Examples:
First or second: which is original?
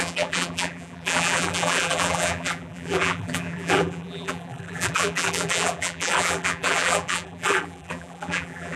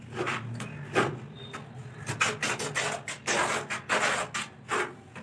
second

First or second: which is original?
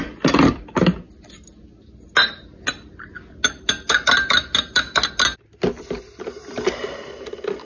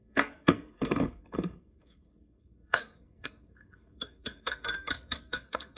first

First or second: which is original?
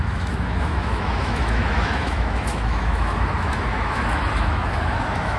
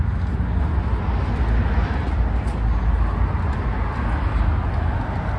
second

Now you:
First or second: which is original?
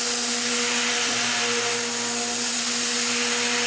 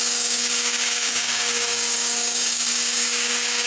first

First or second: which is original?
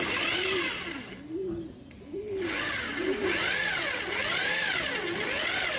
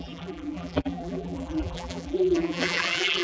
first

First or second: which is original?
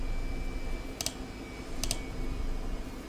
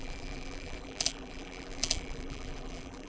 first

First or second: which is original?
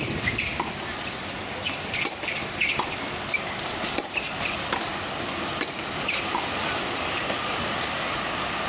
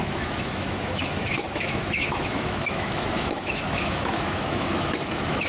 first